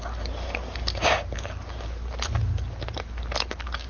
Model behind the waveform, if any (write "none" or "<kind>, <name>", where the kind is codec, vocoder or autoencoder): none